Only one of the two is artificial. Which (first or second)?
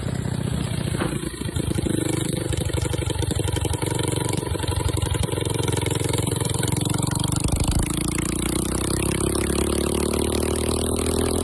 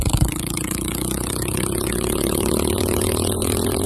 second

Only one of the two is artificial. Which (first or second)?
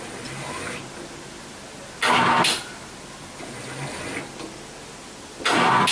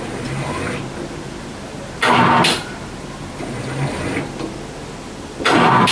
second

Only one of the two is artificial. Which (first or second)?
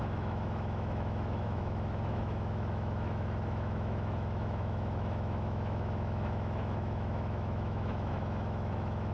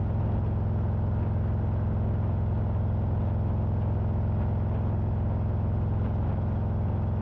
first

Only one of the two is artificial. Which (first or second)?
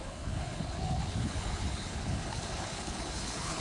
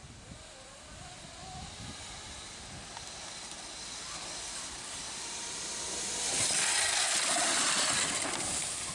first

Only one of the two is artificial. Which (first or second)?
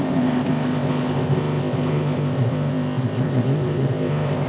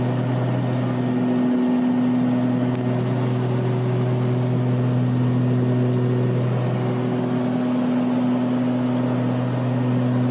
first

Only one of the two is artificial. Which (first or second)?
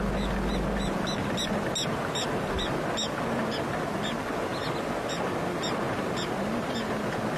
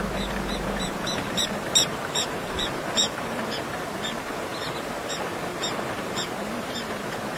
second